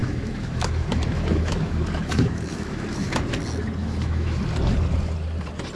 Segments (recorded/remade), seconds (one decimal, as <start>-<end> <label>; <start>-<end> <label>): 0.0-3.2 remade; 3.2-3.8 recorded; 3.8-4.4 remade; 4.4-5.8 recorded

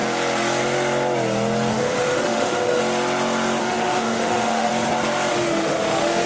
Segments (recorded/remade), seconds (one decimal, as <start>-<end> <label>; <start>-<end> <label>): 0.0-1.7 recorded; 1.7-2.8 remade; 2.8-3.6 recorded; 3.6-4.7 remade; 4.7-5.3 recorded; 5.3-6.3 remade